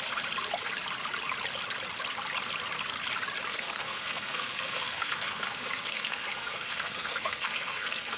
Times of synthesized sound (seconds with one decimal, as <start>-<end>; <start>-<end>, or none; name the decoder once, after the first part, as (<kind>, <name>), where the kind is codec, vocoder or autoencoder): 3.5-8.2 (codec, SNAC)

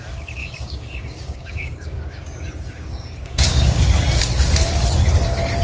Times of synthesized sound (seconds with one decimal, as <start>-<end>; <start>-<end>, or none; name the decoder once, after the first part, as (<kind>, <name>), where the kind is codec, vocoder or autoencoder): 0.4-3.8 (codec, DAC)

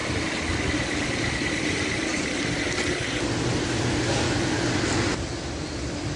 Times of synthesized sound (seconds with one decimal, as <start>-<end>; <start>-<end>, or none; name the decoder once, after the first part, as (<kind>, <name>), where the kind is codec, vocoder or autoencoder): none

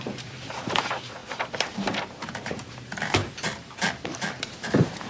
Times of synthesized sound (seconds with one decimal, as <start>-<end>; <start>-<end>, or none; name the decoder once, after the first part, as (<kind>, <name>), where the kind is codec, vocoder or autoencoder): 0.0-3.2 (vocoder, BigVGAN v2); 4.4-5.1

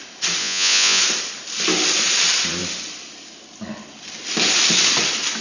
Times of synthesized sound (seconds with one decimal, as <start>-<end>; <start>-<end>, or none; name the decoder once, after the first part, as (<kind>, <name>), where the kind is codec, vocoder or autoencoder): 0.4-1.0 (vocoder, Vocos)